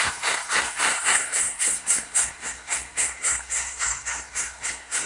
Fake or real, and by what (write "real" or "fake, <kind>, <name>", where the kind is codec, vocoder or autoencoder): fake, codec, SNAC